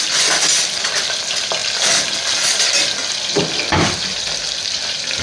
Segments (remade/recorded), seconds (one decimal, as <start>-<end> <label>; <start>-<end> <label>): 0.0-5.2 recorded